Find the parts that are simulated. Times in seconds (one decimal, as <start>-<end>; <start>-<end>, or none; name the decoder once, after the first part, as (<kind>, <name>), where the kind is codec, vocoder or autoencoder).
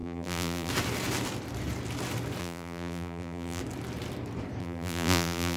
0.0-0.7 (vocoder, BigVGAN v2); 2.4-3.6; 4.6-5.6